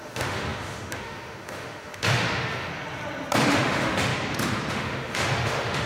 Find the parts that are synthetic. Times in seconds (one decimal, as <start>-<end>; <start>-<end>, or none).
0.0-2.7; 3.5-4.1; 4.7-5.9